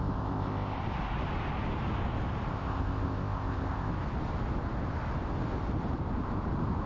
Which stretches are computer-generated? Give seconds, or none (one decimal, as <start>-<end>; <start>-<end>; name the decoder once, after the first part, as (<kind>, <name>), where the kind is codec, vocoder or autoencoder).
0.0-0.8 (codec, ZipCodec); 2.5-3.9

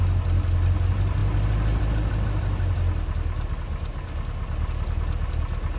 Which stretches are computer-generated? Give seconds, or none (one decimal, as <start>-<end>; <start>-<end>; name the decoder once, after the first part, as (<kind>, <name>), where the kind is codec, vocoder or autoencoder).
none

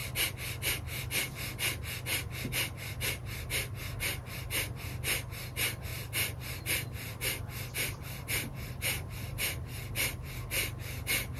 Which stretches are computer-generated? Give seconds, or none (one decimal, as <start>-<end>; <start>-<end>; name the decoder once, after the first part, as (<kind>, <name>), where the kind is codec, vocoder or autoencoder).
0.0-1.4 (vocoder, BigVGAN v2); 5.9-10.4

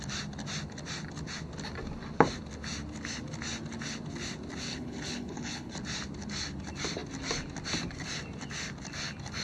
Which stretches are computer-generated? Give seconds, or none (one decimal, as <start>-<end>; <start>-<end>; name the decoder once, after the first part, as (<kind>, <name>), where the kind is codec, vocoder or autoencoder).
4.7-5.7 (codec, HILCodec)